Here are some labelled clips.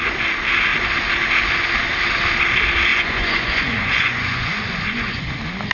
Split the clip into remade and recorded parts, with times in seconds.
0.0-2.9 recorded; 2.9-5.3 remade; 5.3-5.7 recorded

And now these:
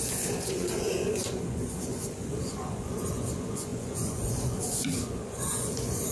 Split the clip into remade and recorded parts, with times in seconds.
0.0-6.1 remade

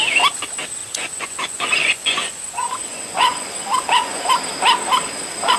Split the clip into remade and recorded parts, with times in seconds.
0.0-0.8 recorded; 0.8-4.2 remade; 4.2-5.6 recorded

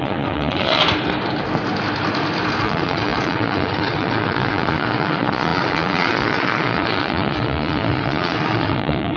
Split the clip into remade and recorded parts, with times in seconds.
0.0-0.8 remade; 0.8-2.6 recorded; 2.6-9.2 remade